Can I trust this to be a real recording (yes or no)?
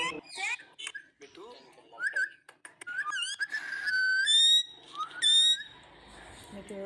yes